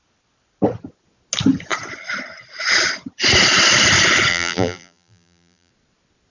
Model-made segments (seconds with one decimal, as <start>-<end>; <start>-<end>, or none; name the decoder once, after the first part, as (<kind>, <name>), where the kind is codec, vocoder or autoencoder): 4.3-5.7 (vocoder, BigVGAN v2)